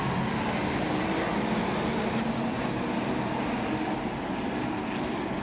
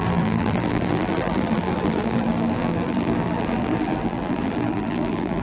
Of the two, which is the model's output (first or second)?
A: second